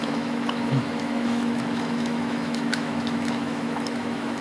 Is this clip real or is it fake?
fake